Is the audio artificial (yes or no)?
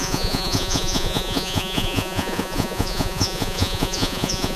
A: yes